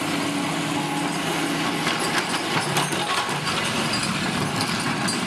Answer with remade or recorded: recorded